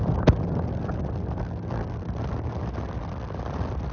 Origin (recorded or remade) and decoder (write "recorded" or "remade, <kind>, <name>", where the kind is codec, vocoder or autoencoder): recorded